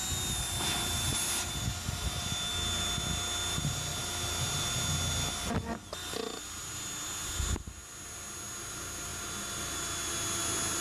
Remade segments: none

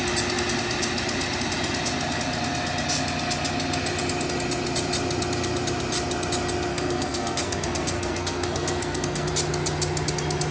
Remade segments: 6.7-9.3 (codec, SNAC)

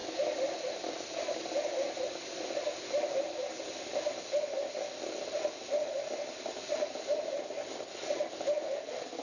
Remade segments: none

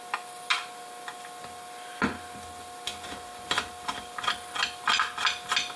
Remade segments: none

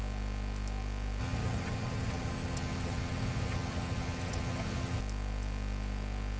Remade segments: 1.2-5.0 (vocoder, HiFi-GAN)

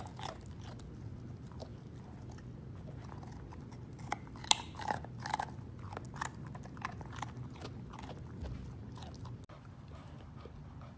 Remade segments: none